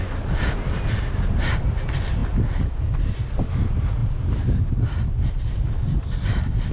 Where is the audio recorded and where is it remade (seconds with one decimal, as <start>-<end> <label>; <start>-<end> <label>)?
0.0-6.7 recorded